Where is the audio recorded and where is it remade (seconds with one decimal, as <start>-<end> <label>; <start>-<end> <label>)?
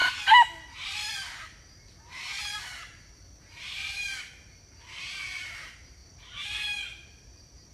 0.0-7.7 recorded